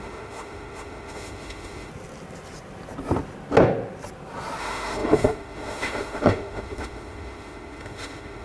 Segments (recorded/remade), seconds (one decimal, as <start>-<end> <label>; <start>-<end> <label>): 0.0-1.9 remade; 1.9-4.6 recorded; 4.6-8.4 remade